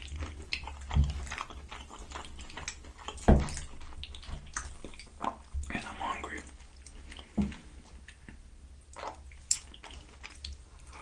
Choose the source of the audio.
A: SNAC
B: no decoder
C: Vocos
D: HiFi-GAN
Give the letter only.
B